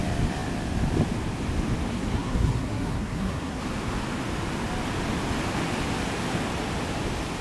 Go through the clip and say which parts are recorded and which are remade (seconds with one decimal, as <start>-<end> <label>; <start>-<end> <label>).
0.0-1.9 recorded; 1.9-3.6 remade; 3.6-7.4 recorded